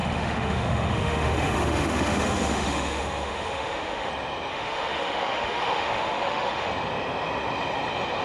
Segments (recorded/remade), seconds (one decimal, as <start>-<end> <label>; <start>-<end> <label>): 0.0-4.1 remade; 4.1-4.5 recorded; 4.5-6.7 remade; 6.7-8.2 recorded